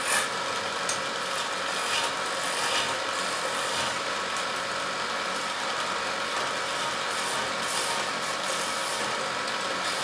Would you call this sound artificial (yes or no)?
no